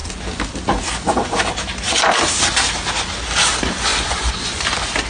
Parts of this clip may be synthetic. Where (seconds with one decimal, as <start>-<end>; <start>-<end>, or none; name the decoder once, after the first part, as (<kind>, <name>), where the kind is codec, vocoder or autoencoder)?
3.9-4.6 (vocoder, Vocos)